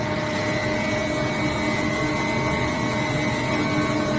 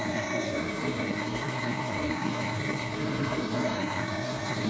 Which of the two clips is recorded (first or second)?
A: first